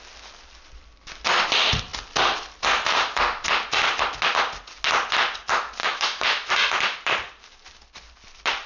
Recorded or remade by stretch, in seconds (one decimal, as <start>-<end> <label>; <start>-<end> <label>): 0.0-5.8 recorded; 5.8-6.5 remade; 6.5-8.7 recorded